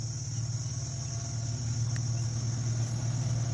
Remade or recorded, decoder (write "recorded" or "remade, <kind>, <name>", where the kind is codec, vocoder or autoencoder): recorded